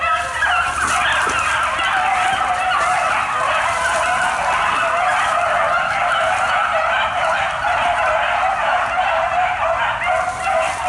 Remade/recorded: recorded